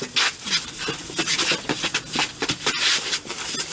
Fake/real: real